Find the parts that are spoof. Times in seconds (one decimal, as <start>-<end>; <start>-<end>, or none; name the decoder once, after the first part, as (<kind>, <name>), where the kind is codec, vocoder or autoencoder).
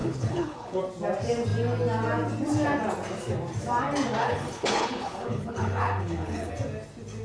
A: 0.0-0.8 (codec, HILCodec); 4.2-6.5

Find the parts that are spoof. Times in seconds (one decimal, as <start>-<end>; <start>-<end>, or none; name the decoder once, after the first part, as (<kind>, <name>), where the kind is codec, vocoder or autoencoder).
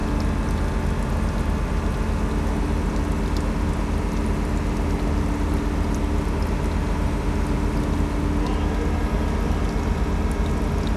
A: none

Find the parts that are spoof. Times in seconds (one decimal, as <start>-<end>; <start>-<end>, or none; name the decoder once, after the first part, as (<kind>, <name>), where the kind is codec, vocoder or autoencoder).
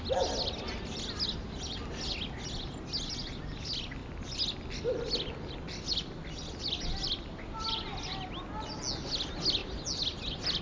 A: none